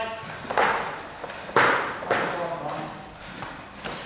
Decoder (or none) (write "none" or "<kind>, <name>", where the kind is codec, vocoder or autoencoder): none